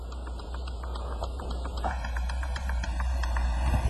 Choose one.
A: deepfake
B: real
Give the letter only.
A